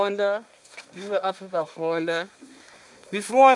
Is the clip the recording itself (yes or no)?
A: no